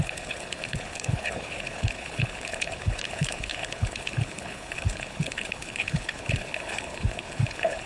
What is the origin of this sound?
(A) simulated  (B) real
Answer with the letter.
A